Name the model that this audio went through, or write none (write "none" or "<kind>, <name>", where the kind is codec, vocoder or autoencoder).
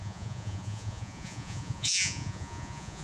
vocoder, Vocos